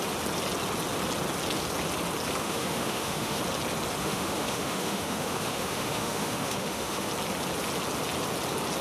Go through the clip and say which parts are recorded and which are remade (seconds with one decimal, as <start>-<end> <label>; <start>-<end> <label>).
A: 0.0-2.4 recorded; 2.4-3.4 remade; 3.4-4.0 recorded; 4.0-7.1 remade; 7.1-8.8 recorded